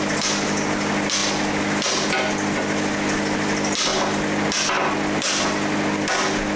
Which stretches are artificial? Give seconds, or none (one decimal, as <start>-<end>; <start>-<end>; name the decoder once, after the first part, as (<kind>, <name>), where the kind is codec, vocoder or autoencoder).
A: none

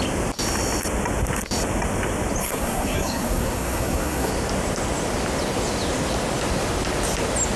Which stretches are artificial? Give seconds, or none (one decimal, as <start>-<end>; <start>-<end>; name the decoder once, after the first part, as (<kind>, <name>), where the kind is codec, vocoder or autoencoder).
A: 2.4-4.3 (codec, SNAC)